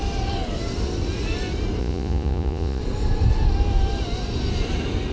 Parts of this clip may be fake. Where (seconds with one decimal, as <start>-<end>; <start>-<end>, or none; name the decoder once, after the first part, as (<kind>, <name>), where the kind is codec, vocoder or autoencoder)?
1.8-2.8 (vocoder, Vocos)